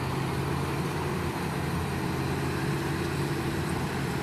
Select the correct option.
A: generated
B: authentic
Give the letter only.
B